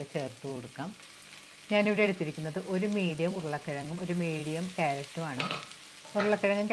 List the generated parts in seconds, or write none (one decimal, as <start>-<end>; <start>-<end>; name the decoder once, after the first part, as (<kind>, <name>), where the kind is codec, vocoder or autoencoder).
0.0-4.4 (vocoder, BigVGAN v2)